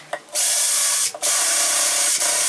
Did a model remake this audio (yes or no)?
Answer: yes